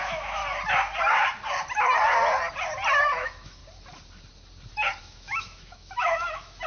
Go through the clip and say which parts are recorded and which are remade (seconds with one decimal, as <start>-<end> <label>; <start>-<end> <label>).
0.0-0.4 remade; 0.4-3.1 recorded; 3.1-3.6 remade; 3.6-5.0 recorded; 5.0-6.7 remade